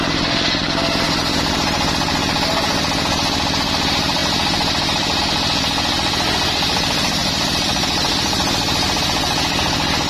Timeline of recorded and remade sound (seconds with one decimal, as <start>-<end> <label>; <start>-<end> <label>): 0.0-7.2 recorded; 7.2-9.0 remade; 9.0-10.1 recorded

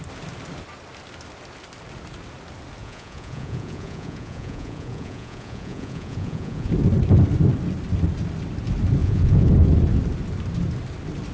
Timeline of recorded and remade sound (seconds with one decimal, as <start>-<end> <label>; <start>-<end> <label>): 0.0-2.8 recorded; 2.8-6.7 remade; 6.7-9.0 recorded; 9.0-9.5 remade; 9.5-11.3 recorded

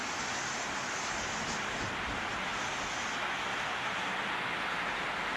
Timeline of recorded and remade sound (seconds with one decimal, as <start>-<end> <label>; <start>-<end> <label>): 0.0-5.4 recorded

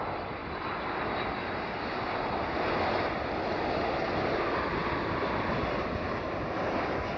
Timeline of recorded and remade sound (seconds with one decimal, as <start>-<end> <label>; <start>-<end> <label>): 0.0-7.2 recorded

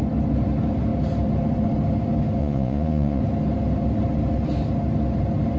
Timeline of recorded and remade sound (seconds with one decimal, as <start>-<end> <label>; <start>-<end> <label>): 0.0-2.4 recorded; 2.4-3.2 remade; 3.2-5.6 recorded

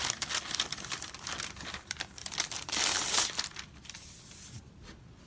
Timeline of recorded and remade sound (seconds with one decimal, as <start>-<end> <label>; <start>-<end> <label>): 0.0-1.1 remade; 1.1-2.2 recorded; 2.2-3.5 remade; 3.5-5.3 recorded